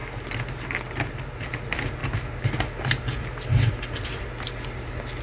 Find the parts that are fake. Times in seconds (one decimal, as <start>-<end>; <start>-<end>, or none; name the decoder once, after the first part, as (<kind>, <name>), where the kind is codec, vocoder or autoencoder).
none